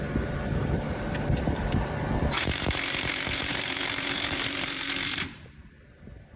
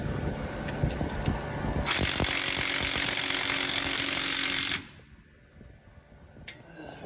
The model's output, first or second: first